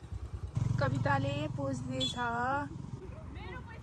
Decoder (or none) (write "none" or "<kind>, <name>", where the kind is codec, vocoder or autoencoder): vocoder, BigVGAN v2